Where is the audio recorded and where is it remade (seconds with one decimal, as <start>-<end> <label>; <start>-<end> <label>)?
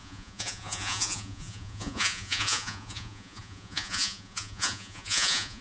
0.0-5.6 remade